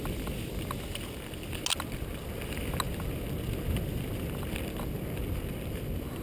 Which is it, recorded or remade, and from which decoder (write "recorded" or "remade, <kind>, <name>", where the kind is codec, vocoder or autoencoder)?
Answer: recorded